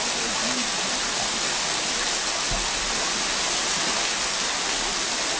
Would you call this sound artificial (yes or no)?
no